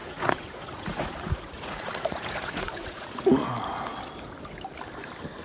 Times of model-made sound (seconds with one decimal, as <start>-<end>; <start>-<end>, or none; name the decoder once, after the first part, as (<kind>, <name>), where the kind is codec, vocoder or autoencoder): 0.0-3.2 (vocoder, Vocos)

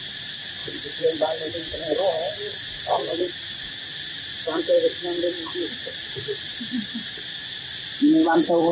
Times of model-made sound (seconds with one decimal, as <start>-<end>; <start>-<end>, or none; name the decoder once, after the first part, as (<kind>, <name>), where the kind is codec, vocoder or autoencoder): 0.0-8.7 (vocoder, BigVGAN v2)

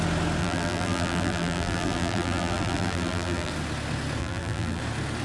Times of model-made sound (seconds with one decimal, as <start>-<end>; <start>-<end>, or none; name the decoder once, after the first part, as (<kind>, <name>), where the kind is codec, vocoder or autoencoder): 0.4-3.5 (vocoder, BigVGAN v2); 4.2-4.8

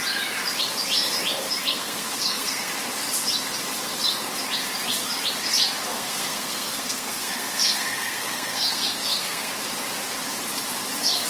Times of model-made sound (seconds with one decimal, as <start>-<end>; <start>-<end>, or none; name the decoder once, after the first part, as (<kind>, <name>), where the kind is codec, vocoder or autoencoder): 1.6-2.7 (codec, SNAC); 5.9-9.5